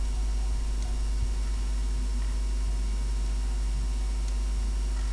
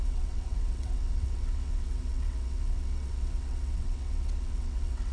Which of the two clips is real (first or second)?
first